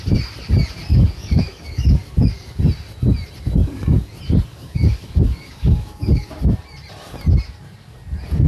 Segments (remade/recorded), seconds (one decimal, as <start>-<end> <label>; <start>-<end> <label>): 0.0-0.9 recorded; 0.9-2.6 remade; 2.6-3.6 recorded; 3.6-4.1 remade; 4.1-4.5 recorded; 4.5-6.3 remade; 6.3-8.5 recorded